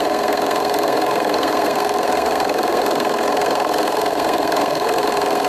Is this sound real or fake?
fake